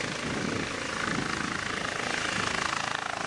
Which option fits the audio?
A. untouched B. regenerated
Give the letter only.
A